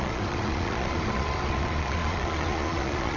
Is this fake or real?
fake